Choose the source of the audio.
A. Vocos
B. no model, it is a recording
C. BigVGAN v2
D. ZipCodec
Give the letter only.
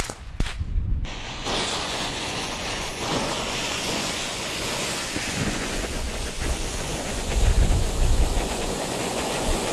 A